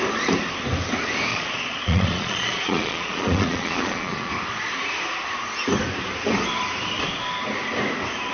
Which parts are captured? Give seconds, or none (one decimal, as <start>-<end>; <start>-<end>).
0.0-1.3; 4.3-8.3